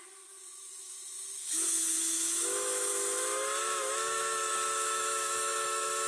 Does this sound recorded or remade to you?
remade